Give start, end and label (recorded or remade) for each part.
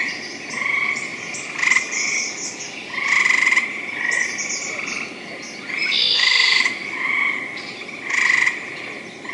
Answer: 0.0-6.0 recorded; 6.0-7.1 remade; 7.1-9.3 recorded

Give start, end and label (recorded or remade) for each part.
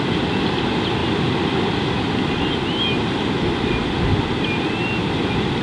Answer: 0.0-1.0 recorded; 1.0-2.5 remade; 2.5-5.6 recorded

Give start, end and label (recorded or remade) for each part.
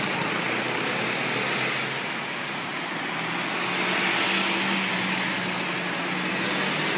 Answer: 0.0-7.0 recorded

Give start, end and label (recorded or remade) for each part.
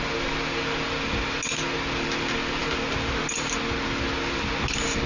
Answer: 0.0-5.1 recorded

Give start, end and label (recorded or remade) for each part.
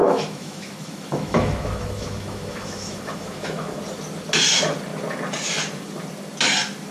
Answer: 0.0-3.8 remade; 3.8-6.9 recorded